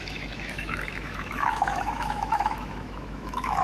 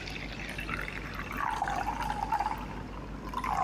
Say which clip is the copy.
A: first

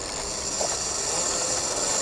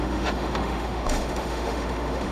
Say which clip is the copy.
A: second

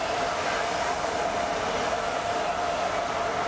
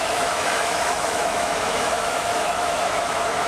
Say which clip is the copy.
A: second